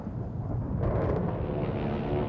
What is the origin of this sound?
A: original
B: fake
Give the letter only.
A